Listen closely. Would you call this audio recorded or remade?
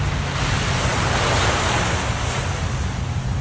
recorded